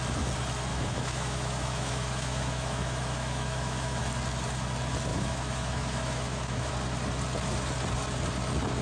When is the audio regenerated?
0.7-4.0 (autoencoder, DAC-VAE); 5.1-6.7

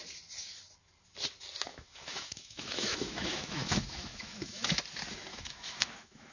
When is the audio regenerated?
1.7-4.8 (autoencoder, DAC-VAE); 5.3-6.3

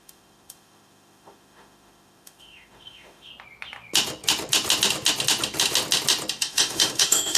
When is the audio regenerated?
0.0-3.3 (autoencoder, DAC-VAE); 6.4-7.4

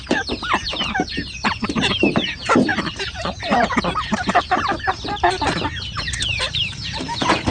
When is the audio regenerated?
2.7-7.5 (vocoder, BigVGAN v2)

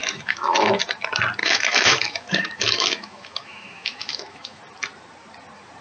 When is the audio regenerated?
0.0-0.8 (autoencoder, DAC-VAE); 1.4-4.6